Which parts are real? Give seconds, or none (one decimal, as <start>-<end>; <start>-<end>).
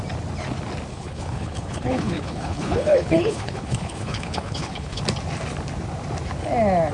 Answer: 0.0-0.9; 5.0-6.9